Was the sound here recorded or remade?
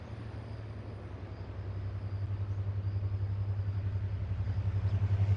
recorded